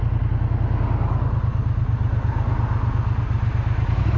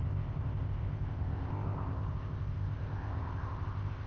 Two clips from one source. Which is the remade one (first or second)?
second